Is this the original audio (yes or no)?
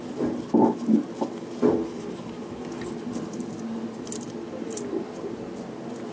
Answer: yes